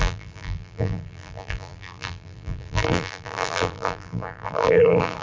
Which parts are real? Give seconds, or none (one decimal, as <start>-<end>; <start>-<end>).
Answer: none